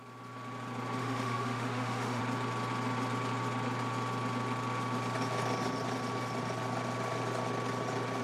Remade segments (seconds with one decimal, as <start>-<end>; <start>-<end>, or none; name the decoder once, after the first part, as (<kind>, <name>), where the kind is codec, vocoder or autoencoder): 1.0-2.2 (autoencoder, DAC-VAE)